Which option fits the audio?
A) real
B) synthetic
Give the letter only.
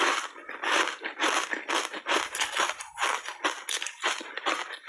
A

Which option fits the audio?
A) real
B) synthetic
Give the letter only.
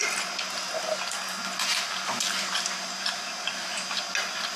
A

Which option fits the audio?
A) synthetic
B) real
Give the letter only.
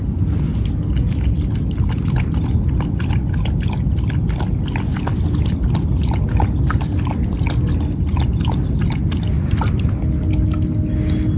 B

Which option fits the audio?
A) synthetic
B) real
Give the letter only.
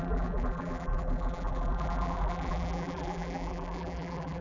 A